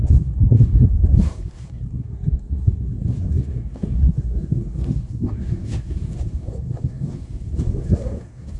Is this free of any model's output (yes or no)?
no